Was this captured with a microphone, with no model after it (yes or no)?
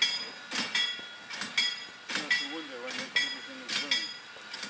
yes